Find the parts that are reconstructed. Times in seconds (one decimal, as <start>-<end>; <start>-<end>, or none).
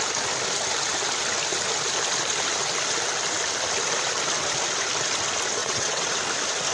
5.6-6.1